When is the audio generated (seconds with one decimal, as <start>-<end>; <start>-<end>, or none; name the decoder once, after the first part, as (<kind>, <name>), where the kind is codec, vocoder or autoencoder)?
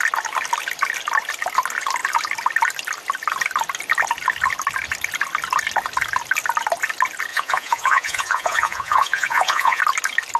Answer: 7.3-9.8 (vocoder, Vocos)